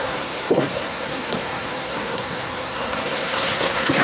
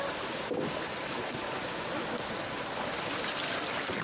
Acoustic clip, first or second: second